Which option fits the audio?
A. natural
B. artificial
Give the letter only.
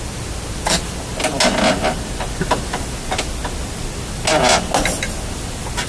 A